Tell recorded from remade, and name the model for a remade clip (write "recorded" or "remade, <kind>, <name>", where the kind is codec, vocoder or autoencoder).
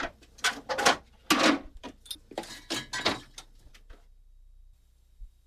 recorded